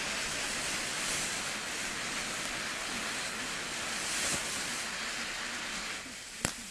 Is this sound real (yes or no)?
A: yes